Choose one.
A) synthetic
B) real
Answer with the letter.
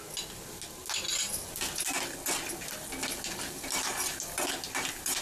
B